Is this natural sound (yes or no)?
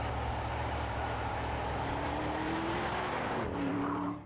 no